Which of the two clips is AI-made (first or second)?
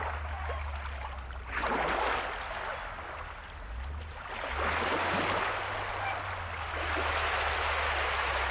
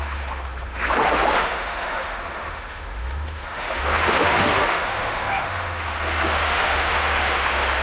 second